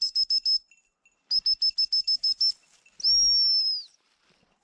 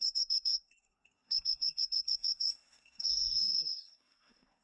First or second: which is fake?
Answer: second